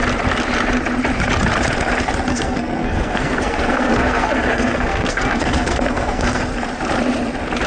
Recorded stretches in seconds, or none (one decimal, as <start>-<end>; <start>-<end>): 0.0-2.3; 6.4-7.7